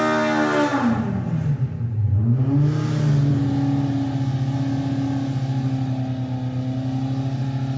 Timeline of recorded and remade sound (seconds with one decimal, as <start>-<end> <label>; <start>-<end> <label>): 0.0-7.8 recorded